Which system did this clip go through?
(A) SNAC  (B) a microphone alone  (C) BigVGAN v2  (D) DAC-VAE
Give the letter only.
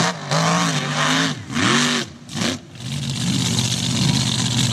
B